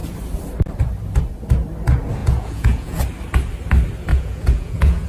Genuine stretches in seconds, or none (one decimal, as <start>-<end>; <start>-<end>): 0.0-2.2; 3.0-4.1